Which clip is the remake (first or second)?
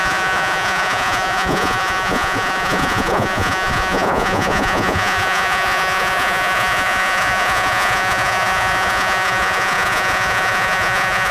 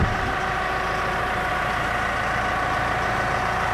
first